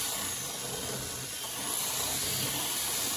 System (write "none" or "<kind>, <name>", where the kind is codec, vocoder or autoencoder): none